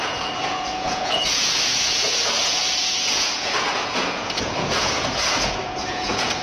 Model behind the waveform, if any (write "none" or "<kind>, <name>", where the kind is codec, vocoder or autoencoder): vocoder, Vocos